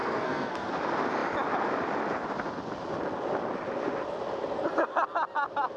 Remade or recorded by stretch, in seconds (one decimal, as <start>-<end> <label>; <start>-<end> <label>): 0.0-0.7 remade; 0.7-5.8 recorded